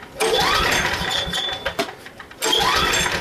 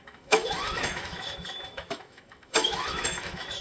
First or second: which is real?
first